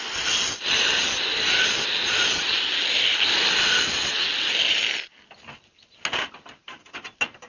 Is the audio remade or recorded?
recorded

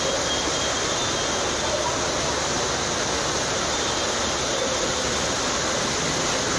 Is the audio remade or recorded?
recorded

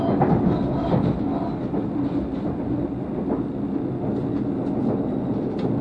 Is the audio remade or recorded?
recorded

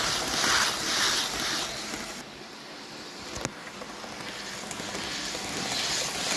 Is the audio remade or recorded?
recorded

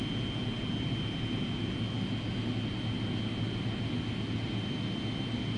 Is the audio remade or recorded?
recorded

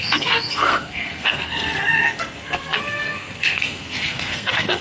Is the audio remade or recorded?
remade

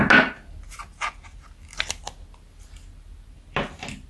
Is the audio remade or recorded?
recorded